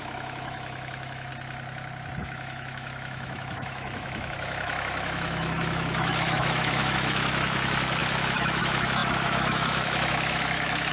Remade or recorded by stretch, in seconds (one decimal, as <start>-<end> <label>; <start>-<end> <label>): 0.0-1.3 remade; 1.3-2.2 recorded; 2.2-10.9 remade